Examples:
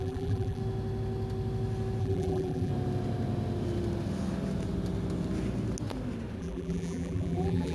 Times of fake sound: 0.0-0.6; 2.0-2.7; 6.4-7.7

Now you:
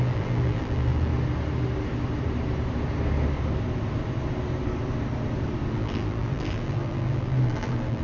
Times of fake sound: 0.0-1.1; 5.7-8.0

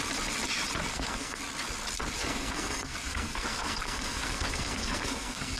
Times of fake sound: 0.9-1.4; 2.2-5.6

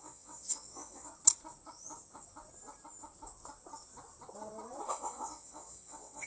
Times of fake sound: 0.0-1.1; 4.9-6.3

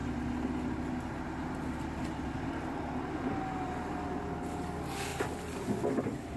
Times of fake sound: none